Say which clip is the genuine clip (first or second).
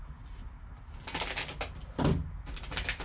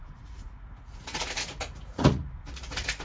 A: first